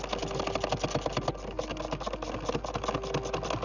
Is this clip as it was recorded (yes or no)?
yes